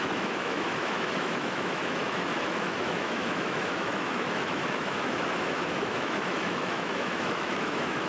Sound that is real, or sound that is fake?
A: fake